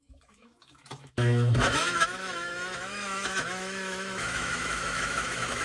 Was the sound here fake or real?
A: fake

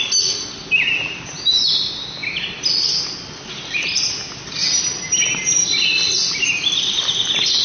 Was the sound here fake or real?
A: real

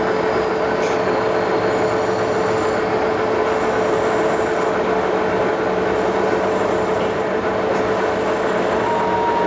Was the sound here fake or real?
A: real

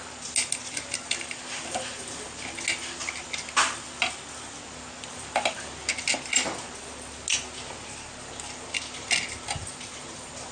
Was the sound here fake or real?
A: real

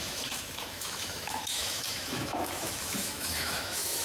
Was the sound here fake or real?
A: fake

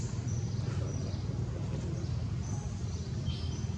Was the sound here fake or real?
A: real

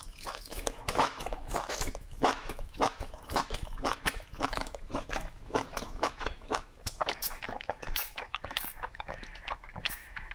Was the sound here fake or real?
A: fake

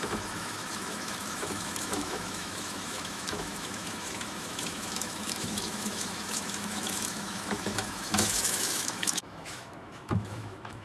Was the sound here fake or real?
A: fake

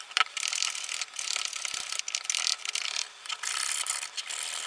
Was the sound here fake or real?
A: real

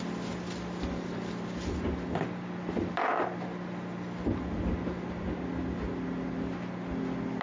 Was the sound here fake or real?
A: real